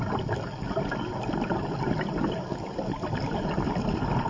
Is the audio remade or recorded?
recorded